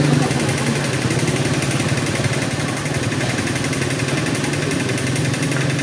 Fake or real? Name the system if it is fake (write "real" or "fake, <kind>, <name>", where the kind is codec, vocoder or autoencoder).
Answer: real